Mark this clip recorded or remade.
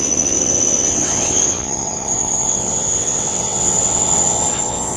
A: remade